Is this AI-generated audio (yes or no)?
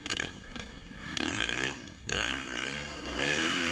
yes